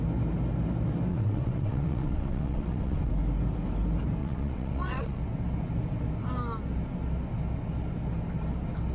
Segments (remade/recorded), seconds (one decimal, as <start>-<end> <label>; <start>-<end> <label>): 0.0-1.1 recorded; 1.1-3.1 remade; 3.1-4.2 recorded; 4.2-5.2 remade; 5.2-8.9 recorded